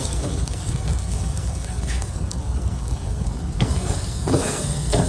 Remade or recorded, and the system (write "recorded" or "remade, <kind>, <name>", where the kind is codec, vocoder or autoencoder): remade, codec, SNAC